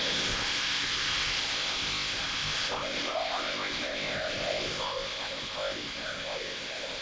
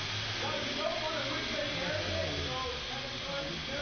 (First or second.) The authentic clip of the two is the second